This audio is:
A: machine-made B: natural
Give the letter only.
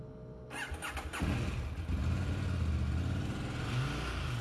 B